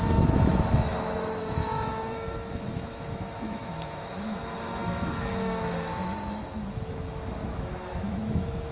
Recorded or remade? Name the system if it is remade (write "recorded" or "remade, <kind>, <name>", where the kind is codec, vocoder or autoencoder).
remade, autoencoder, DAC-VAE